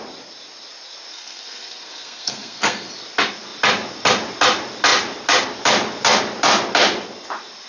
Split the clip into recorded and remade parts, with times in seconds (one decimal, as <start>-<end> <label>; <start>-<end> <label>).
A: 0.0-1.1 recorded; 1.1-2.9 remade; 2.9-7.7 recorded